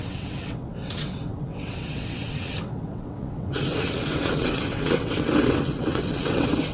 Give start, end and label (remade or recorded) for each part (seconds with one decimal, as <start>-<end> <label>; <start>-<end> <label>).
0.0-6.7 remade